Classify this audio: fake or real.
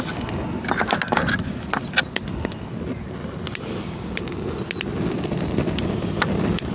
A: real